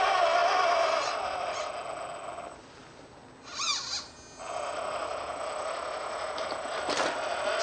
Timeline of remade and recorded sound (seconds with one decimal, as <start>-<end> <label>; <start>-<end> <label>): 0.0-7.6 recorded